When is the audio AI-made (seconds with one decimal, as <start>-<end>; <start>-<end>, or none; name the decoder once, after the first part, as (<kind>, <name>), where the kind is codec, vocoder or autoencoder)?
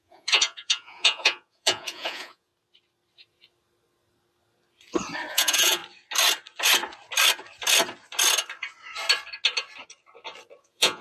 0.0-2.5 (vocoder, Vocos); 5.3-5.8; 10.6-11.0